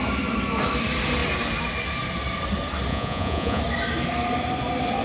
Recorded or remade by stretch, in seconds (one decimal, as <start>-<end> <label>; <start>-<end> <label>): 0.0-2.9 recorded; 2.9-3.6 remade; 3.6-5.0 recorded